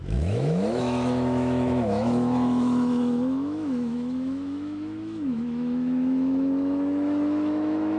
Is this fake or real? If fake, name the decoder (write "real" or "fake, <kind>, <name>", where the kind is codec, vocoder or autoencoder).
fake, autoencoder, DAC-VAE